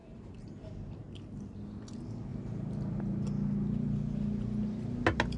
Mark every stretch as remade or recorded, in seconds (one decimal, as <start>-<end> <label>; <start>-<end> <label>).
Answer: 0.0-0.7 remade; 0.7-2.3 recorded; 2.3-3.0 remade; 3.0-5.4 recorded